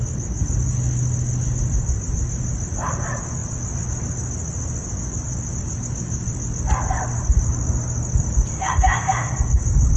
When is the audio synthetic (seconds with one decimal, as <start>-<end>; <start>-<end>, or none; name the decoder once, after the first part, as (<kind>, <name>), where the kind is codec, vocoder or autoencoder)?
8.5-9.3 (autoencoder, DAC-VAE)

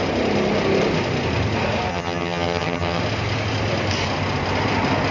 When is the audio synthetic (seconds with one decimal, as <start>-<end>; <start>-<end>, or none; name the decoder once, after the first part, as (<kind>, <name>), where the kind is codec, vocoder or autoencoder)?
1.9-3.0 (vocoder, HiFi-GAN)

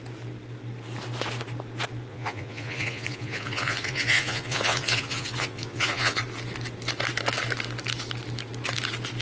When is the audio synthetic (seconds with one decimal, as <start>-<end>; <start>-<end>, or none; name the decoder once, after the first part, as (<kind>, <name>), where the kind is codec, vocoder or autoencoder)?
2.1-6.2 (vocoder, Vocos)

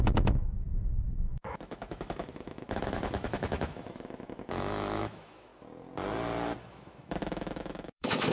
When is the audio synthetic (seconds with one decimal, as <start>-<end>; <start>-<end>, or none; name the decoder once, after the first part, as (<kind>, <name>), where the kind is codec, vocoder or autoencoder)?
0.0-5.5 (autoencoder, DAC-VAE); 6.7-8.3